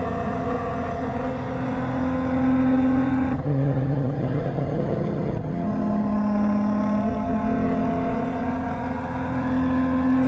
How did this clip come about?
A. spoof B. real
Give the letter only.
A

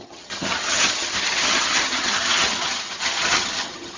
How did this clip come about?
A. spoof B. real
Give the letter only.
A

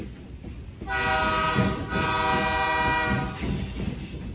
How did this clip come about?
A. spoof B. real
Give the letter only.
B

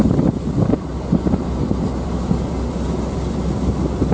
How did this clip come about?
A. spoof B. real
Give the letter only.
B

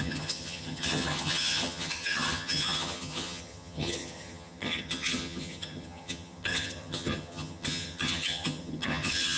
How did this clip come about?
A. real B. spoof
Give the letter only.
B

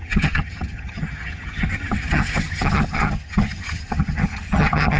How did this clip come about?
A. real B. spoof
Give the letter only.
B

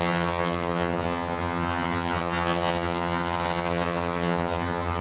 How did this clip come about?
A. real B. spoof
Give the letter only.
B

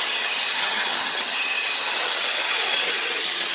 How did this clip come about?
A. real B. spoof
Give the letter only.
B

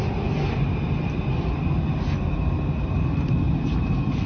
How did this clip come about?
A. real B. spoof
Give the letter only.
A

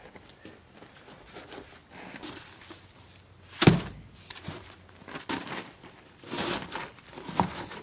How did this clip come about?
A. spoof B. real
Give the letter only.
B